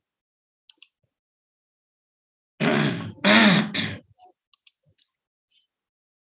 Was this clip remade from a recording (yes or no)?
no